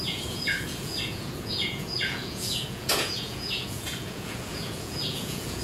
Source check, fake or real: fake